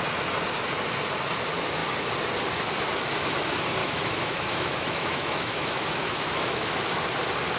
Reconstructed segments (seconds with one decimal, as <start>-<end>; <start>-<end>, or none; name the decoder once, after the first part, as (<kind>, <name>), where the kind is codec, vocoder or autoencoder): 3.8-6.8 (autoencoder, DAC-VAE)